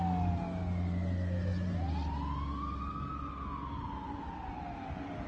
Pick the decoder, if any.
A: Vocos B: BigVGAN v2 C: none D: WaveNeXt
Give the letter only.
C